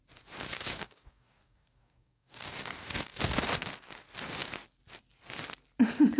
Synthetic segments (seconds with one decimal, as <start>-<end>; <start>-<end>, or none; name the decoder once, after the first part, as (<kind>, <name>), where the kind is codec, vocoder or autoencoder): 0.7-3.2 (codec, DAC)